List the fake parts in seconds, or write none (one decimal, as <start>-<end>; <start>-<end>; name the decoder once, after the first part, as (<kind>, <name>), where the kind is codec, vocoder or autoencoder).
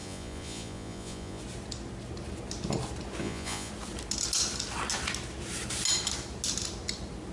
0.0-1.4 (vocoder, Vocos); 3.2-3.7